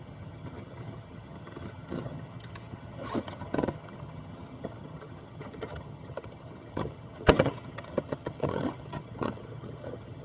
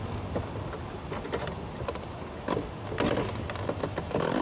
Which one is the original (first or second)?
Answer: second